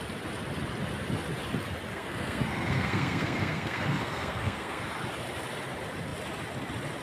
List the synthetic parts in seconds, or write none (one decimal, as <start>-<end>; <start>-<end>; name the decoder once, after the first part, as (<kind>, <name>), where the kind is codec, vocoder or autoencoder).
1.9-4.8 (codec, SNAC)